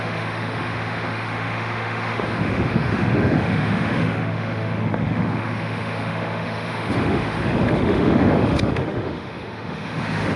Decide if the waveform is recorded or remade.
remade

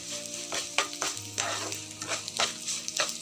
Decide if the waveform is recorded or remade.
recorded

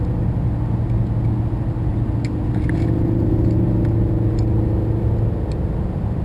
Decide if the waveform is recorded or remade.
recorded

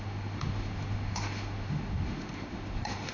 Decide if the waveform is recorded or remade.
remade